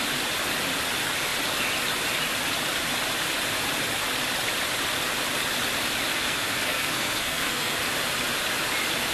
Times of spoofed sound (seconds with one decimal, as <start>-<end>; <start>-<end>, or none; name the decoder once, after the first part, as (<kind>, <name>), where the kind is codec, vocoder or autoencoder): 6.1-7.8 (codec, SNAC)